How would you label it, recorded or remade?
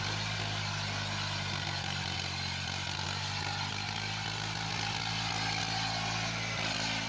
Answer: recorded